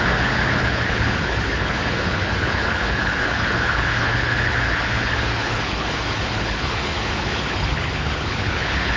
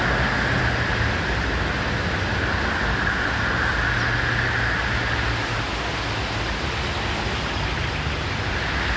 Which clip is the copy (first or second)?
first